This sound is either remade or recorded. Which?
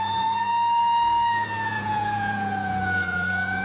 remade